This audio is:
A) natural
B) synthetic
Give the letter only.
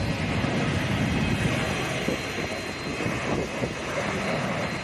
A